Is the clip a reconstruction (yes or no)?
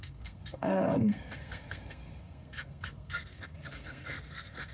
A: yes